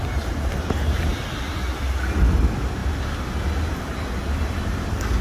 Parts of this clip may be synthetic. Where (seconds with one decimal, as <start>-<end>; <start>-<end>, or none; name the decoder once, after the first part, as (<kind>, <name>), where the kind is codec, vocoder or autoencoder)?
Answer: none